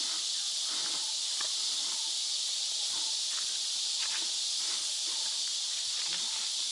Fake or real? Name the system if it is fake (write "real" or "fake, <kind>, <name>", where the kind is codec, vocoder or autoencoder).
real